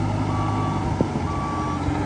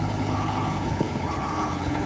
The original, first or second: first